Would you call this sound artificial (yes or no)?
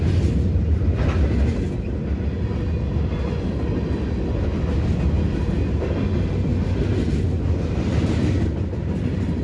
no